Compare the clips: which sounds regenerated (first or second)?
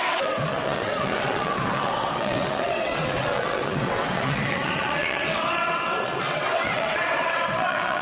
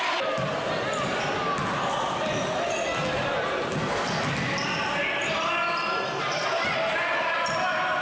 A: first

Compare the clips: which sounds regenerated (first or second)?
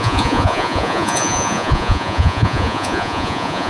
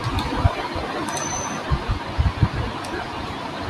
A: first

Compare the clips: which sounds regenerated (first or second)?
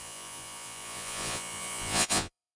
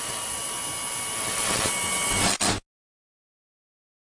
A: first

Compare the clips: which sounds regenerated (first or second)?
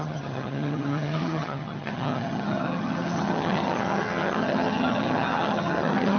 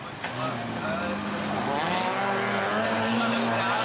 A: first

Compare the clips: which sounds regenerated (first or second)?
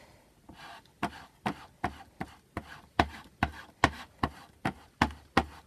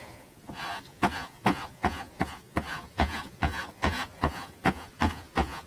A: second